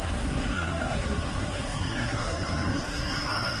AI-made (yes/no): yes